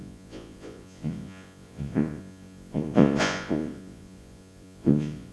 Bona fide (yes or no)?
no